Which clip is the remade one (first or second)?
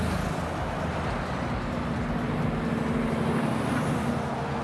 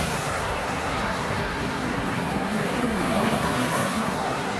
second